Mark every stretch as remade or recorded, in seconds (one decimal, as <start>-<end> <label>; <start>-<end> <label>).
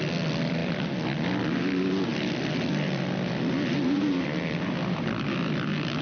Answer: 0.0-6.0 recorded